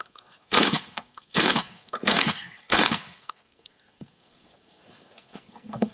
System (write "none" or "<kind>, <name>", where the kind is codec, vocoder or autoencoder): codec, SNAC